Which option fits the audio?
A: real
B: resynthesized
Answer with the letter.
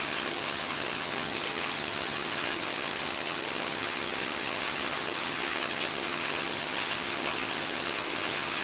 B